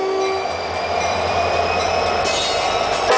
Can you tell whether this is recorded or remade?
recorded